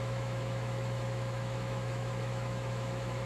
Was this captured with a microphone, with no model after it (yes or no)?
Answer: no